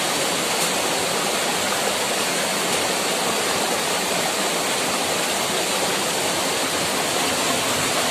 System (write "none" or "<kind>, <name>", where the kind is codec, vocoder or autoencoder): none